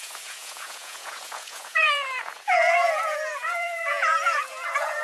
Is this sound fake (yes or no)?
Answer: yes